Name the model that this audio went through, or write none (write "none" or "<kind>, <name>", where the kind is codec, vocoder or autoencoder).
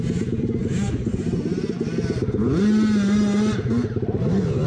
none